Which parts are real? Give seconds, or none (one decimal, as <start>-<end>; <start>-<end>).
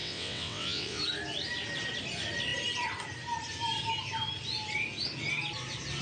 1.0-6.0